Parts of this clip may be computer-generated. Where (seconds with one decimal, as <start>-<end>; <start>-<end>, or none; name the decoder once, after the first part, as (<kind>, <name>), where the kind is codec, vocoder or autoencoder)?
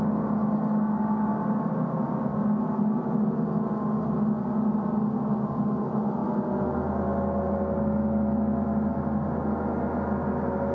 none